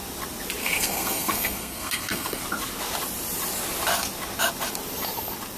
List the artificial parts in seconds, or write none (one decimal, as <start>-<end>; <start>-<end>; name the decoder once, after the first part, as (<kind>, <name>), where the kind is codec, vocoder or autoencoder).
0.6-2.4 (codec, SNAC)